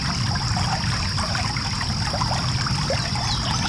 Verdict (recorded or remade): recorded